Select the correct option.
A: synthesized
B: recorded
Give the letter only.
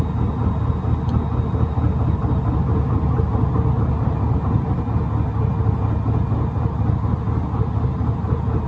B